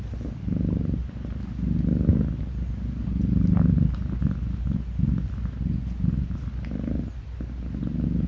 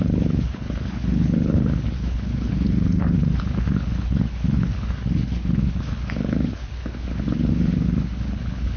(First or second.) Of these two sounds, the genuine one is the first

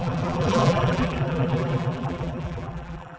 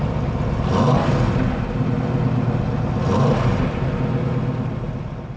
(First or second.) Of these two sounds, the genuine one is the second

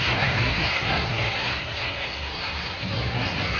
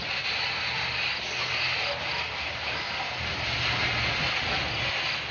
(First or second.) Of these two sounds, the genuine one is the second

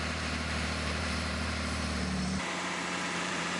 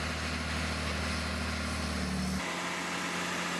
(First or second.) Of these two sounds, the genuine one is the second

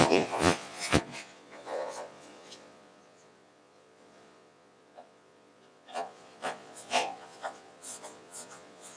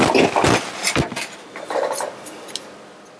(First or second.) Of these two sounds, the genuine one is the second